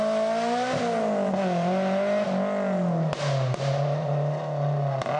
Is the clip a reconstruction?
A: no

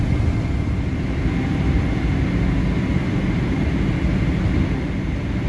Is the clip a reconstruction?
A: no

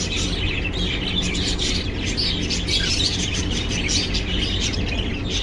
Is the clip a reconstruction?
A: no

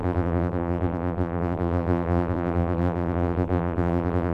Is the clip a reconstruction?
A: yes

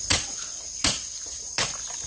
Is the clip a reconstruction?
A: no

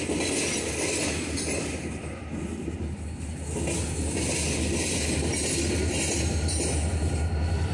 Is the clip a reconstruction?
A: no